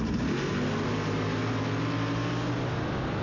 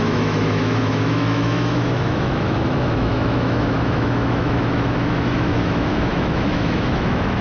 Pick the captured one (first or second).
first